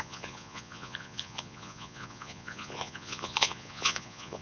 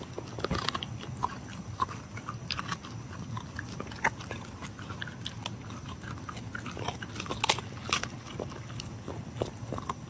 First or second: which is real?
second